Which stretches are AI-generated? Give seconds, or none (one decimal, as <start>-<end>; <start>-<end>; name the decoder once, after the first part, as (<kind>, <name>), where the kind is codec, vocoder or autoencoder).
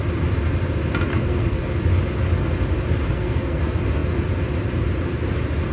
1.1-1.6 (codec, SNAC); 3.1-3.6